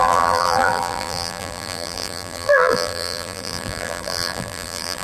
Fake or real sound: fake